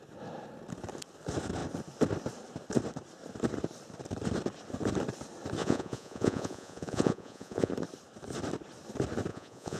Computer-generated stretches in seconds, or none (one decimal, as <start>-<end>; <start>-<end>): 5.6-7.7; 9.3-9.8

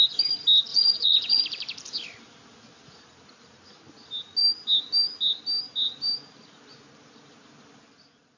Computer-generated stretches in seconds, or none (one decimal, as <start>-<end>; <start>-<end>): 0.7-1.4

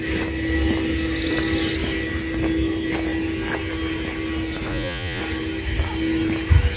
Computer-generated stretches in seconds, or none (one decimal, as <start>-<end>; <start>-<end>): 4.7-5.2